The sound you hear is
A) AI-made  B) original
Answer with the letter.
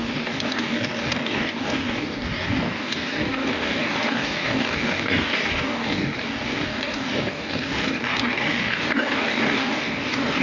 A